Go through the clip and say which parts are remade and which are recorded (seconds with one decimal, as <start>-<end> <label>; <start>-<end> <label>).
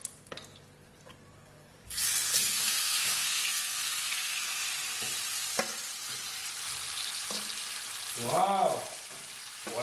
0.0-2.3 recorded; 2.3-4.5 remade; 4.5-9.8 recorded